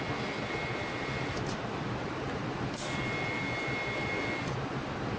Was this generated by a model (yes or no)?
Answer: no